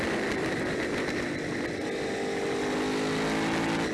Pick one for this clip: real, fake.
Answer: real